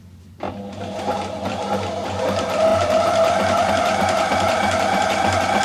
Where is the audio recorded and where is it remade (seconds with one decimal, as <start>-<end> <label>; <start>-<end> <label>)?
0.0-5.6 recorded